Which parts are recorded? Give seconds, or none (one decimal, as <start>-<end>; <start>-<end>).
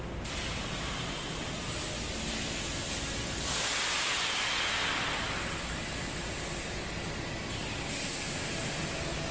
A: 0.0-9.3